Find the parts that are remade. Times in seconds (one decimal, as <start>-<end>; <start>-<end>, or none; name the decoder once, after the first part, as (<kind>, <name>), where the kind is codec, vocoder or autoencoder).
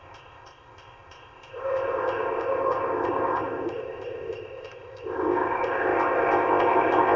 0.0-7.2 (codec, ZipCodec)